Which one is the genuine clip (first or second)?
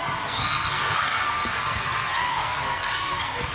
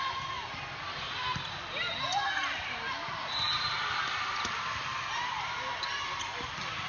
second